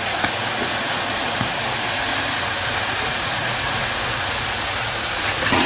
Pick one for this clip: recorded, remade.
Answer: remade